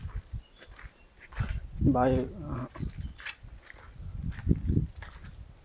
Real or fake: real